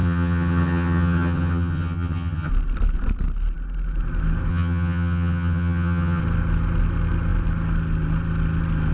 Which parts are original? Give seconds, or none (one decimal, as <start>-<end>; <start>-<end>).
2.5-4.5; 6.2-8.9